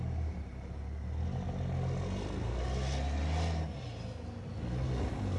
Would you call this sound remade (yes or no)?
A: no